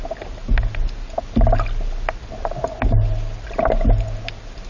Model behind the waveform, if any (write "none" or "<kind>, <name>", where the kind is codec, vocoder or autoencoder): none